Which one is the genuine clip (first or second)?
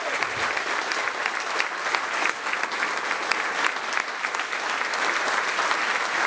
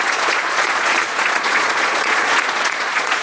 first